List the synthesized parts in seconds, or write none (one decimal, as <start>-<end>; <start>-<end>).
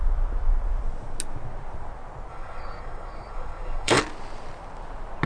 2.3-4.0